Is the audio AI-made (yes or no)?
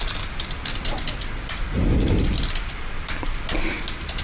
no